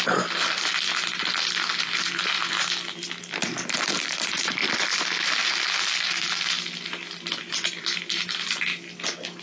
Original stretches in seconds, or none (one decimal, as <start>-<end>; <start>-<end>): 0.0-9.4